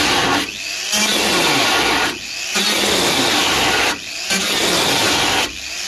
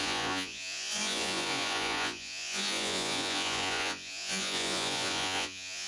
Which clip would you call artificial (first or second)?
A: second